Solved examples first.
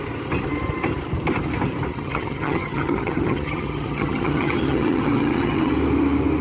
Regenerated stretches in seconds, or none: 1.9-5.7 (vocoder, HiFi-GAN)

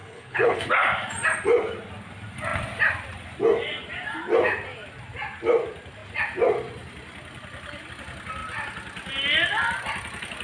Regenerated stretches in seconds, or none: 0.0-0.6 (codec, HILCodec)

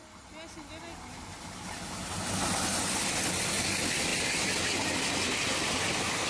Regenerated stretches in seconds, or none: none